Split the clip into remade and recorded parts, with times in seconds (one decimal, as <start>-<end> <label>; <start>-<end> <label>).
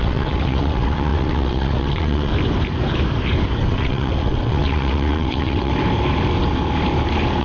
0.0-2.3 remade; 2.3-3.7 recorded; 3.7-5.7 remade; 5.7-7.4 recorded